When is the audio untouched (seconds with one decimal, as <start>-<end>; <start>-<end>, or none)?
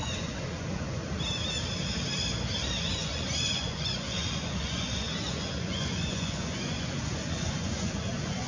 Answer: 1.0-2.6